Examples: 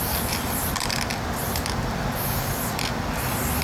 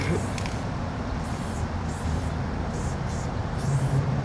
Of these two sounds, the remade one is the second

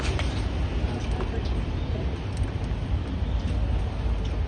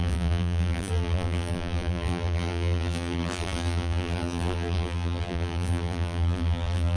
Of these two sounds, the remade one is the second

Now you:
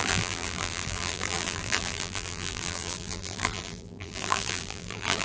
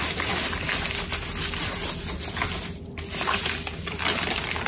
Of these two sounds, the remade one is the first